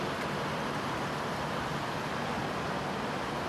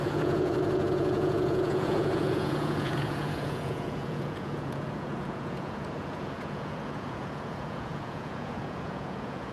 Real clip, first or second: first